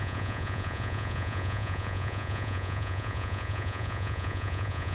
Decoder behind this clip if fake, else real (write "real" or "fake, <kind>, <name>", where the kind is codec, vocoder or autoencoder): fake, vocoder, Vocos